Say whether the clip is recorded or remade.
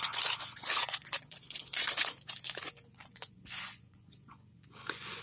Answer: remade